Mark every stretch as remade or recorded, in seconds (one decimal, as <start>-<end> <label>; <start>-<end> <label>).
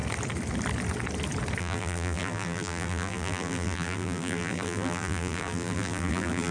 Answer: 0.0-1.6 recorded; 1.6-6.5 remade